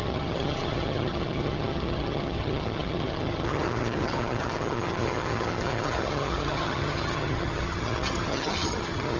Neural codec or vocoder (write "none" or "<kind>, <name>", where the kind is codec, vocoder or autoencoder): vocoder, HiFi-GAN